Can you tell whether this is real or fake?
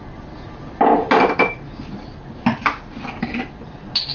real